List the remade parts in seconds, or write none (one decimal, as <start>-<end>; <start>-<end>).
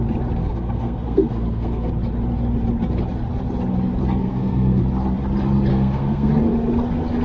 0.4-1.9; 4.2-4.8; 5.7-6.3